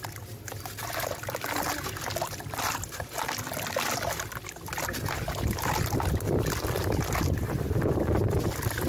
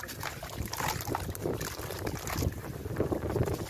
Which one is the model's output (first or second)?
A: second